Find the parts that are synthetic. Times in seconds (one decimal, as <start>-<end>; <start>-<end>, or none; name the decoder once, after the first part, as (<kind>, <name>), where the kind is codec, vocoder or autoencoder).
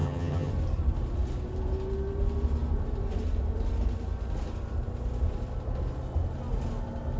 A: 0.0-0.5 (vocoder, HiFi-GAN)